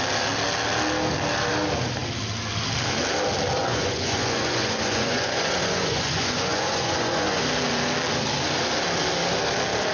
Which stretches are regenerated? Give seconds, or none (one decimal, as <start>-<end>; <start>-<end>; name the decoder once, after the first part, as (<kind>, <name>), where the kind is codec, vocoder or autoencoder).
3.6-7.4 (vocoder, Vocos)